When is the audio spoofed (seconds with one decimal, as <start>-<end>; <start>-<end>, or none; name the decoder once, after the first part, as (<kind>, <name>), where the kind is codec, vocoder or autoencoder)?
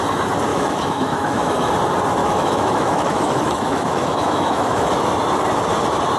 0.5-1.7 (autoencoder, DAC-VAE); 2.2-4.9